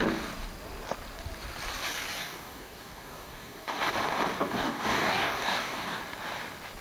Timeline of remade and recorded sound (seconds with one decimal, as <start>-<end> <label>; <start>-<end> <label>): 0.0-2.2 recorded; 2.2-3.8 remade; 3.8-4.4 recorded; 4.4-6.0 remade; 6.0-6.8 recorded